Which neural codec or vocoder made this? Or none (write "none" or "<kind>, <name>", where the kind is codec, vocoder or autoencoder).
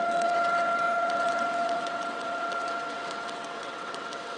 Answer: vocoder, WaveNeXt